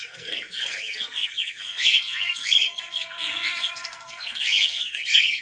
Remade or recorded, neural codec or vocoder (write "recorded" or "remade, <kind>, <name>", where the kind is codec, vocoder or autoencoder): remade, codec, SNAC